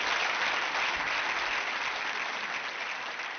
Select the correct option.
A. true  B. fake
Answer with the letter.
A